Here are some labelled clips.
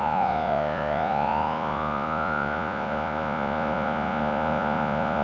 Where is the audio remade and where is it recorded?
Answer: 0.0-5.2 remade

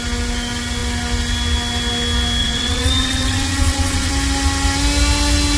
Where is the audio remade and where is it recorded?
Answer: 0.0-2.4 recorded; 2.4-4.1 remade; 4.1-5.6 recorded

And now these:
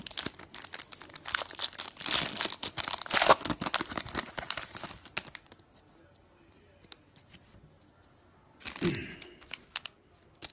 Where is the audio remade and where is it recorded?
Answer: 0.0-10.5 recorded

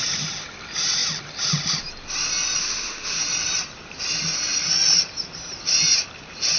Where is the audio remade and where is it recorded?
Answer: 0.0-2.6 recorded; 2.6-3.2 remade; 3.2-6.6 recorded

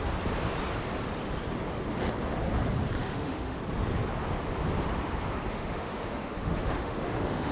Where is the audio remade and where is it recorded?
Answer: 0.0-3.0 recorded; 3.0-3.6 remade; 3.6-5.5 recorded; 5.5-7.5 remade

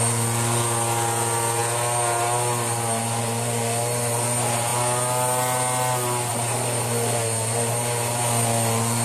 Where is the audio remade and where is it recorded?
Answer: 0.0-9.0 recorded